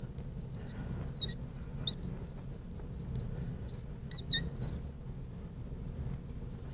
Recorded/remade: recorded